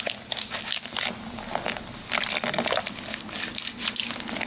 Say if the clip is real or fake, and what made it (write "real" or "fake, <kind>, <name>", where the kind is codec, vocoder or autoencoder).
real